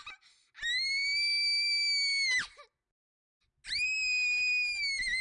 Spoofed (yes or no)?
no